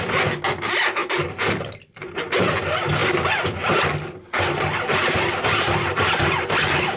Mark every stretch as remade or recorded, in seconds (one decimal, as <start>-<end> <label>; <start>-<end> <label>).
0.0-7.0 recorded